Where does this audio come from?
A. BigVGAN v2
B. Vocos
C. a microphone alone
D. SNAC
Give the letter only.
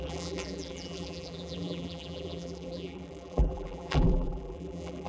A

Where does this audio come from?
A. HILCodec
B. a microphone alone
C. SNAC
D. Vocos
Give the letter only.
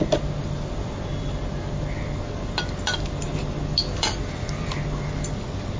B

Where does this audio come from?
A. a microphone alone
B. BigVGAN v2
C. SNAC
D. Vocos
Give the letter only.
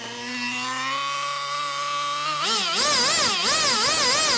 A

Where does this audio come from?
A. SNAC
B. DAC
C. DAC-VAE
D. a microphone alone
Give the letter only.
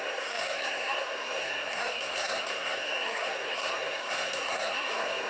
A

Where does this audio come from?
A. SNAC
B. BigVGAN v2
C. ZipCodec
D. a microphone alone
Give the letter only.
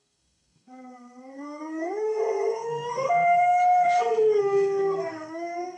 A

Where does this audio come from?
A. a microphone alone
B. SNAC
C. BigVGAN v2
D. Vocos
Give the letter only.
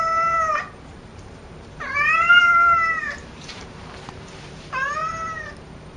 C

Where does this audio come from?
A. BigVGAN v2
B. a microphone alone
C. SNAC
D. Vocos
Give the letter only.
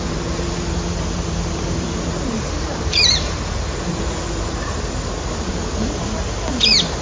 A